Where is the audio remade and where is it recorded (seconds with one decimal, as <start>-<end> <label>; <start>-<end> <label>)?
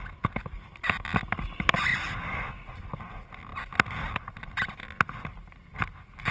0.0-6.3 recorded